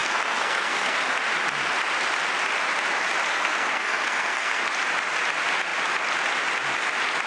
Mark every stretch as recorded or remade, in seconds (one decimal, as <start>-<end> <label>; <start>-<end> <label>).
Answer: 0.0-1.0 remade; 1.0-3.3 recorded; 3.3-4.6 remade; 4.6-7.3 recorded